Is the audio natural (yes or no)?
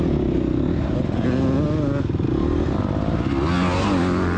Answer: yes